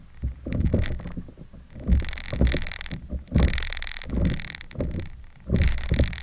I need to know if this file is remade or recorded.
recorded